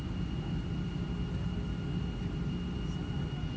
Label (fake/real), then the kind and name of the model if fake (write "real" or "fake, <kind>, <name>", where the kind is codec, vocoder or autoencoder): real